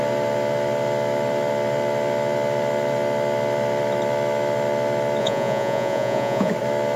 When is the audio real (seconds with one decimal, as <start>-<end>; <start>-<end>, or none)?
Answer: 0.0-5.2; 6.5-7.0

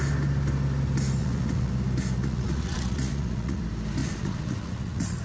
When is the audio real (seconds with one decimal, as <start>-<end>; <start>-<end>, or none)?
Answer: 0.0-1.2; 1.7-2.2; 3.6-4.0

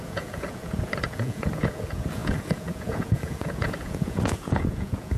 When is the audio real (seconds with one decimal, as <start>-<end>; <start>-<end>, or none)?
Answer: none

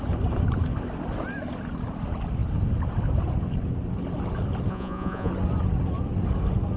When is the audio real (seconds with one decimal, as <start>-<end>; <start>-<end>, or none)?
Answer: 0.0-4.7; 5.3-6.8

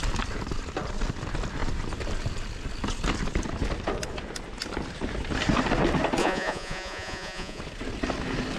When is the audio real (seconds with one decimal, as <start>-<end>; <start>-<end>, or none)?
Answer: 0.0-6.2; 7.6-8.6

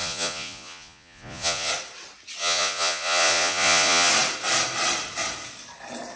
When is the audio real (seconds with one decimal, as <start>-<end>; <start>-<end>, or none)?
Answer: 1.7-2.4; 4.1-6.2

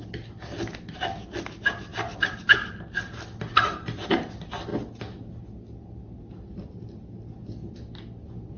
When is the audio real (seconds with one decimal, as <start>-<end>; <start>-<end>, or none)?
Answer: 0.0-8.6